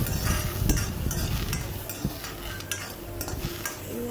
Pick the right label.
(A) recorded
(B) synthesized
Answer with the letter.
A